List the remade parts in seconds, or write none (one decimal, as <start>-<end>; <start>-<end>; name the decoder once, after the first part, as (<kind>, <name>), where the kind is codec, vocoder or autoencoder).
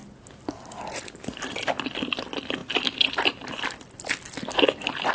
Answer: none